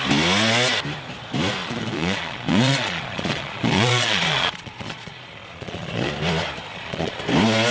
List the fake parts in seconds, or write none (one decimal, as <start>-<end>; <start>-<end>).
1.6-6.1; 6.7-7.2